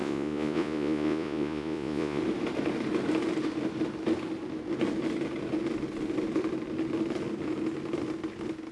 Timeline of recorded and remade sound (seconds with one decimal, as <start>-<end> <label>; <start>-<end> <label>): 0.0-2.2 remade; 2.2-8.7 recorded